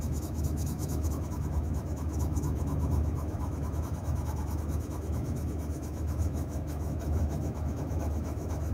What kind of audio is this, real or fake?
fake